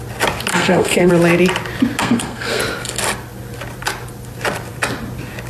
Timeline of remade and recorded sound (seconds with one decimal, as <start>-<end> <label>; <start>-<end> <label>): 0.0-0.5 recorded; 0.5-1.1 remade; 1.1-2.0 recorded; 2.0-2.6 remade; 2.6-5.5 recorded